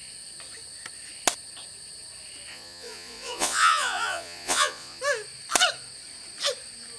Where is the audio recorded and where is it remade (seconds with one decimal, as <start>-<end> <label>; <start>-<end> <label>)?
0.0-2.5 recorded; 2.5-5.0 remade; 5.0-7.0 recorded